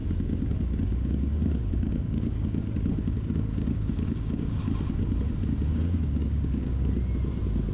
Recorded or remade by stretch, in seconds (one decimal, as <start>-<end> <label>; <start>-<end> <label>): 0.0-4.6 remade; 4.6-5.7 recorded; 5.7-6.9 remade; 6.9-7.7 recorded